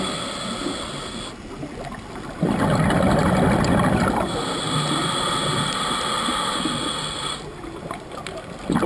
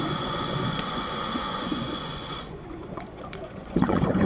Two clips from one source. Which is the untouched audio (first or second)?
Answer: first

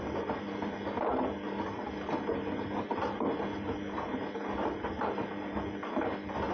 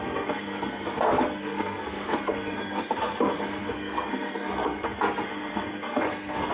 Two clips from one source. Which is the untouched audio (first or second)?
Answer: first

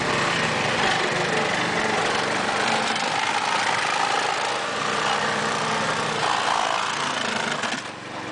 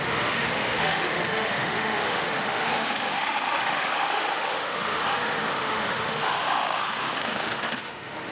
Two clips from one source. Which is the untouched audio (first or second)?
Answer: first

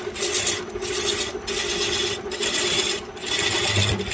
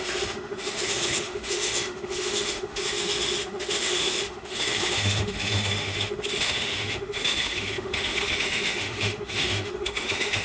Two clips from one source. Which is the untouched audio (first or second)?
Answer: first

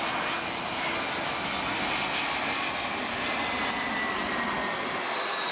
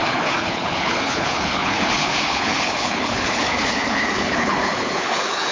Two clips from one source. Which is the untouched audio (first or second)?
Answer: first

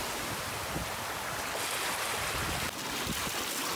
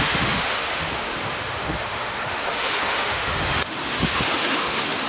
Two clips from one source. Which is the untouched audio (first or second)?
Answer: first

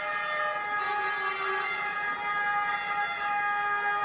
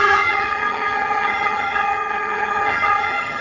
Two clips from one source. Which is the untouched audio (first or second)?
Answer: first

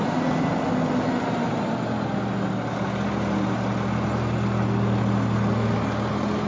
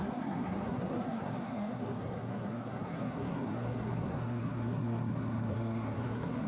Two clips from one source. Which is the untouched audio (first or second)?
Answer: first